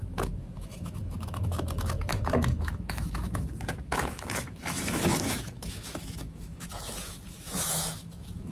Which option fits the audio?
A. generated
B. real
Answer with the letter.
A